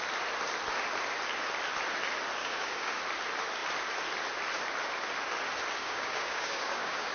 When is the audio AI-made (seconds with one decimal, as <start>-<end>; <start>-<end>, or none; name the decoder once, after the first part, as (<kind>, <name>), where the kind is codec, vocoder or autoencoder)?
2.4-3.0 (codec, DAC); 5.8-7.1